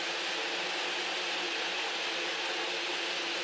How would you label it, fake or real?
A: real